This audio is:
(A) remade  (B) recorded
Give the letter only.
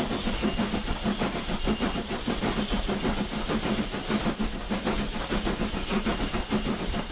B